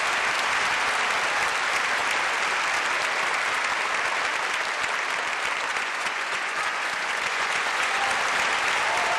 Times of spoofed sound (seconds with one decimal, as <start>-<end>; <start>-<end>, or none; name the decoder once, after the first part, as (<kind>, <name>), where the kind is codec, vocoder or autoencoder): 5.7-8.0 (vocoder, Vocos)